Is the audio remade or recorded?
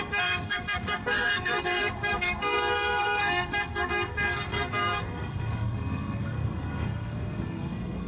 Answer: remade